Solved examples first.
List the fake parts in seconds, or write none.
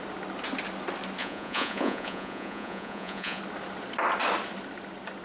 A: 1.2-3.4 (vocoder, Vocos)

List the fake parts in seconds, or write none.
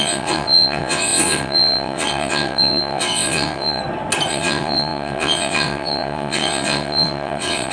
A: 0.0-3.8 (vocoder, WaveNeXt); 4.3-7.7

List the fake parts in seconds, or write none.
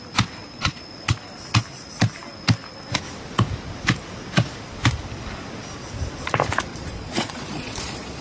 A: 0.4-1.3 (vocoder, Vocos); 6.7-8.2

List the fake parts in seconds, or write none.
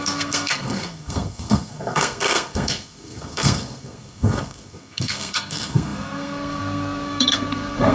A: 0.0-7.9 (codec, SNAC)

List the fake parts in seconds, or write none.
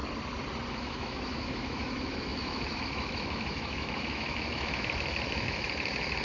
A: 0.7-6.2 (autoencoder, DAC-VAE)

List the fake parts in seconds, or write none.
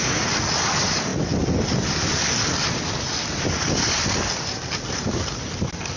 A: none